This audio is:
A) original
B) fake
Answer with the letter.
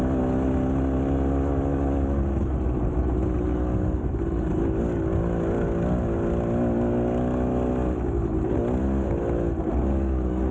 A